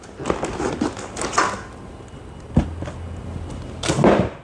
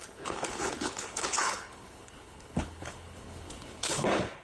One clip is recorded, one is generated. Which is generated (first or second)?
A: second